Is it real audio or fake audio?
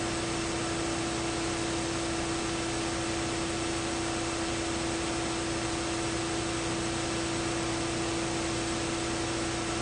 fake